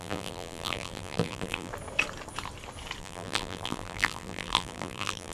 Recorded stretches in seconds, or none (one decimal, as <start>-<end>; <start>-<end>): 1.7-3.0

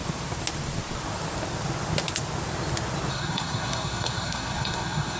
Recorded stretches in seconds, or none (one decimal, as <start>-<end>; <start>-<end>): 0.0-3.1

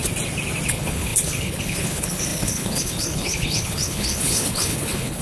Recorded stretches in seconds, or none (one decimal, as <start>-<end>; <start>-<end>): 0.0-0.7

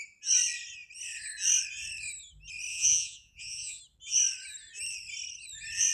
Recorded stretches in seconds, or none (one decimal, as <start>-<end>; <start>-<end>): 0.0-2.7; 3.8-5.9